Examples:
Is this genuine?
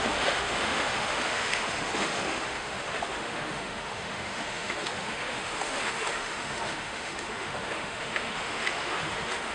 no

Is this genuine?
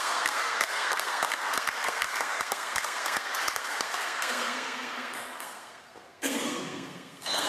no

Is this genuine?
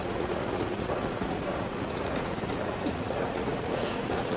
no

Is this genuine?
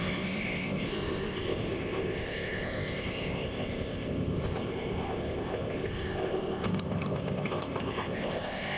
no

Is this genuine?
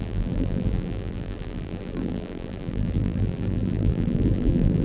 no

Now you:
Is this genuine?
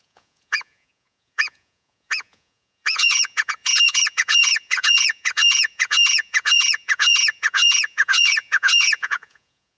no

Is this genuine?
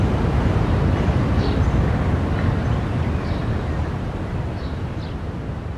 yes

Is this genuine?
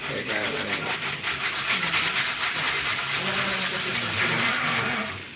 yes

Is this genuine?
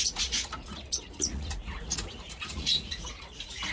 no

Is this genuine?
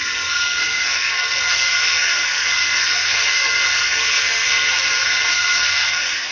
no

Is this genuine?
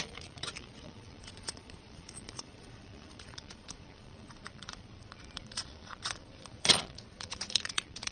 no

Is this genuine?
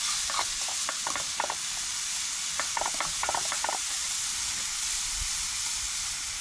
yes